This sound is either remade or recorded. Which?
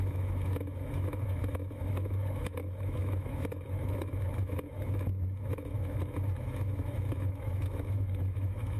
remade